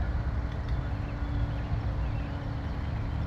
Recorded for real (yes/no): yes